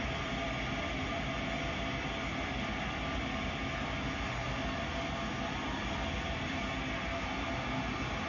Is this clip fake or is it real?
real